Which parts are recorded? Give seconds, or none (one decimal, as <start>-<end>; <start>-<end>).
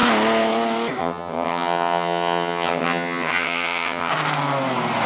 0.0-1.0; 4.1-5.1